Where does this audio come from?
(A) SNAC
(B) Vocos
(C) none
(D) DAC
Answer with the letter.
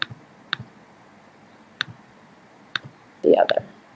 B